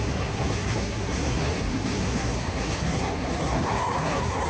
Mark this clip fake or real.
fake